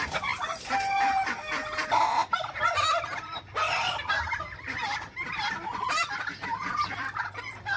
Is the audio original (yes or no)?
no